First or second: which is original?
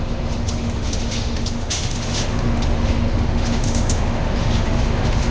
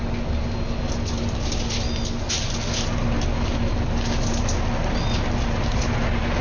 second